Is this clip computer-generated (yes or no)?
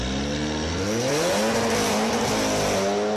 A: no